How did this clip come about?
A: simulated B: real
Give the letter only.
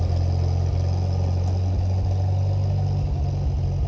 B